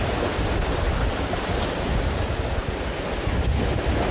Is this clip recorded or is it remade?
recorded